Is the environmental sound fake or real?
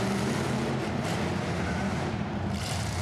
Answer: fake